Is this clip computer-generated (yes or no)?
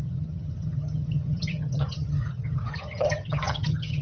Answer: yes